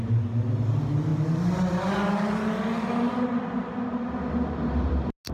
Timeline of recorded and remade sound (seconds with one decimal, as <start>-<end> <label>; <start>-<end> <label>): 0.0-5.3 recorded